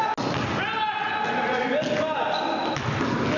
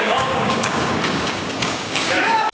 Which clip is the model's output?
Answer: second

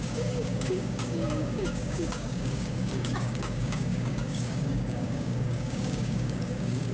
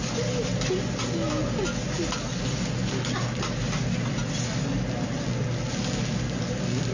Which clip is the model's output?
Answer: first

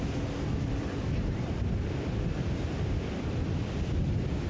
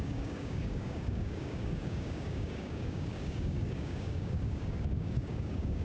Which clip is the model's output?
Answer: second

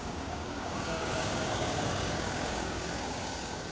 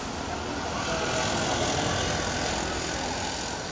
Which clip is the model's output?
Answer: first